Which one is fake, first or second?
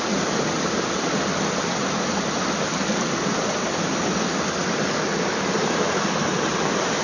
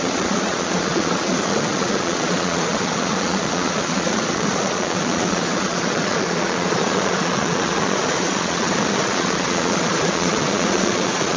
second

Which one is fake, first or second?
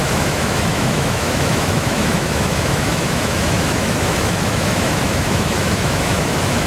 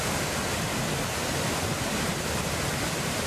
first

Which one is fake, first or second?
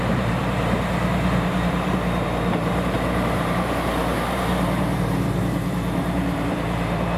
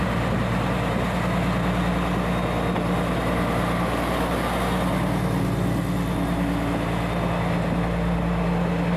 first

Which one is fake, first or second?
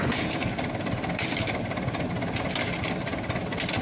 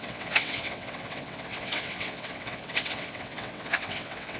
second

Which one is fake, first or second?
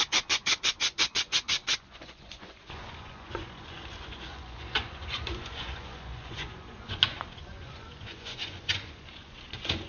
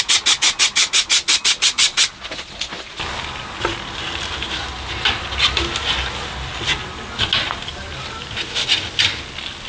first